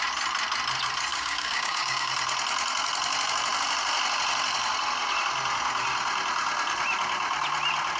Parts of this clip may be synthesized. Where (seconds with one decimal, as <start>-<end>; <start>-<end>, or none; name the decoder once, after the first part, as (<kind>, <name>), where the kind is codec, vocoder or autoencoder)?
1.1-2.1 (codec, DAC)